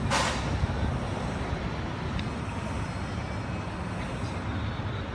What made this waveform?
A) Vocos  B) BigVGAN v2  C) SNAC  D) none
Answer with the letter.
D